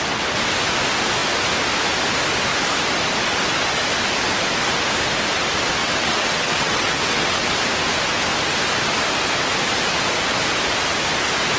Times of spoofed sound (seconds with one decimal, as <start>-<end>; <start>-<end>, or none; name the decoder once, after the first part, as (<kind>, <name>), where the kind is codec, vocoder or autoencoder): 5.8-7.6 (vocoder, WaveNeXt)